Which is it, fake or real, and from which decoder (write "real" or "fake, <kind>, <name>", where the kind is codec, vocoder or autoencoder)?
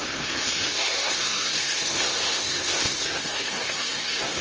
fake, codec, SNAC